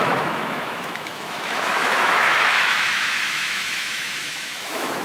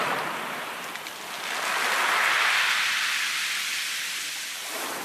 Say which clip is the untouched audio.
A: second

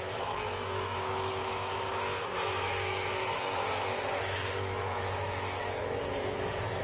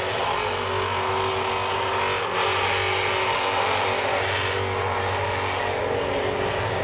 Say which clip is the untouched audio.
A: second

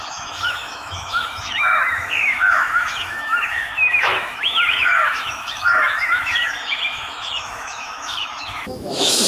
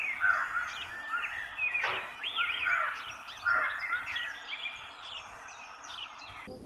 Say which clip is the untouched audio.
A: second